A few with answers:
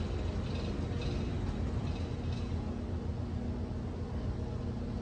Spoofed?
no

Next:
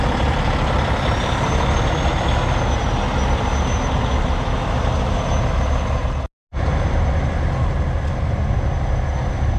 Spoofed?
no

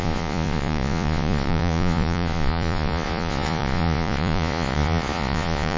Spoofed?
yes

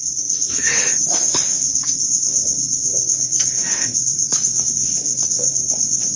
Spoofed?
yes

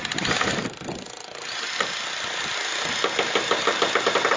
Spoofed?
no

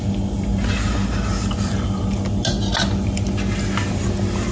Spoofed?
no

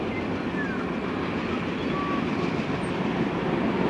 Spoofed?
no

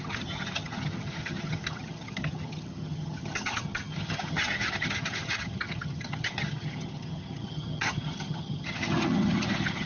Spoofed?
yes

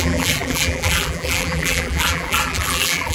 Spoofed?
yes